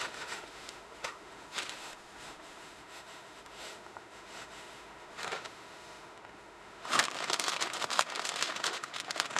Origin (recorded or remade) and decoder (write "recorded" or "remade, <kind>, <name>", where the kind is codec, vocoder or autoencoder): remade, autoencoder, DAC-VAE